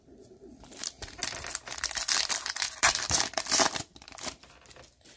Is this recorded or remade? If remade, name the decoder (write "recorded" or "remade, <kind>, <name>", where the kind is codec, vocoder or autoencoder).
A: remade, vocoder, BigVGAN v2